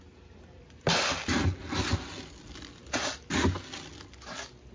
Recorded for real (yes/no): yes